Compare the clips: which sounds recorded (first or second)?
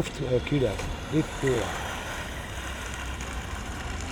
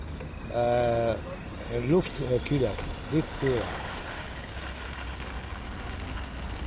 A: second